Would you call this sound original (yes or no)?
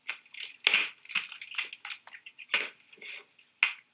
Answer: yes